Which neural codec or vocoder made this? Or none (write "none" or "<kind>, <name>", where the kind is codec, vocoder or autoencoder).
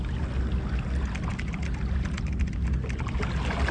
none